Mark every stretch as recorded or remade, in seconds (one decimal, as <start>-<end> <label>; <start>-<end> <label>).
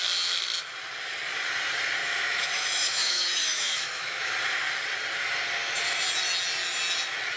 0.0-2.0 recorded; 2.0-4.3 remade; 4.3-7.4 recorded